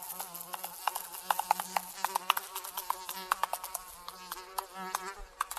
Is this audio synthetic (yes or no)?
no